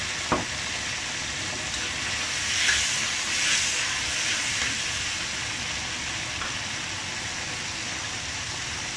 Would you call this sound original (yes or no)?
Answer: yes